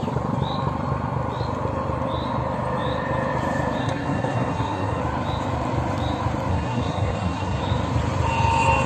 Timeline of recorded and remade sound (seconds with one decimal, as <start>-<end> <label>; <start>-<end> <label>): 0.0-3.8 recorded; 3.8-5.0 remade; 5.0-6.5 recorded; 6.5-7.6 remade; 7.6-8.9 recorded